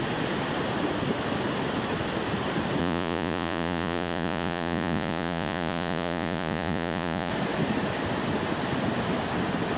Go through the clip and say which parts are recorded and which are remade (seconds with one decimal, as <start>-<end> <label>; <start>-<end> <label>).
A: 0.0-2.8 recorded; 2.8-7.3 remade; 7.3-9.8 recorded